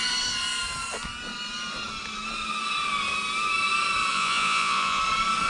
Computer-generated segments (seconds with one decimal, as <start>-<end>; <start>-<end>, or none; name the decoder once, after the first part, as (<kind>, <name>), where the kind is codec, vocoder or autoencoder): 4.1-5.0 (vocoder, Vocos)